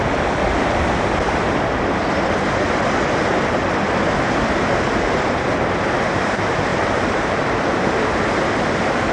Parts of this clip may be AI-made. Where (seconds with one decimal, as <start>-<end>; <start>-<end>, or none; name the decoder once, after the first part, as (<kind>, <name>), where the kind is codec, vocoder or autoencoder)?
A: 6.7-8.1 (vocoder, BigVGAN v2)